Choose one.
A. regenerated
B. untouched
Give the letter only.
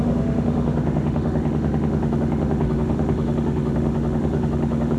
A